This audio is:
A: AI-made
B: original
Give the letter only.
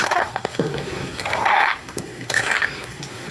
A